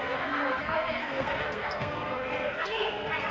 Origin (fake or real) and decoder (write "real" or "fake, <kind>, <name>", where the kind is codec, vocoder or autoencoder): fake, codec, SNAC